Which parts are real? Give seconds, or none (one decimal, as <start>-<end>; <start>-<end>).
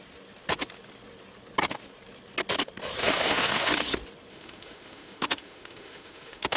0.0-3.0; 3.7-4.3